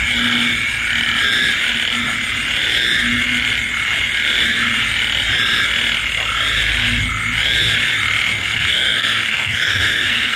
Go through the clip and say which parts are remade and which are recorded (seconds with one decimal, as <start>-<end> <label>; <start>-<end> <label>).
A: 0.0-8.4 recorded; 8.4-10.4 remade